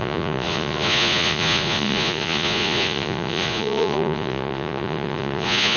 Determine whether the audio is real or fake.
fake